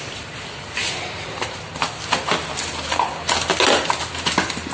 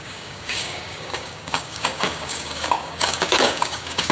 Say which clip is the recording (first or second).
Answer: first